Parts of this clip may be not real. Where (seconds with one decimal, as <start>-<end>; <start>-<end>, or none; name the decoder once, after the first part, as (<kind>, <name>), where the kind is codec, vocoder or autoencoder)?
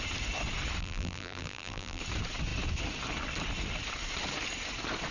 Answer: 0.8-2.0 (vocoder, BigVGAN v2)